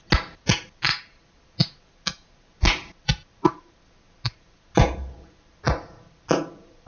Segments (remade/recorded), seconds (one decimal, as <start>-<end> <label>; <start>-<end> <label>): 0.0-6.9 recorded